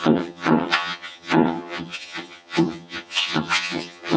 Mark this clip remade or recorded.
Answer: remade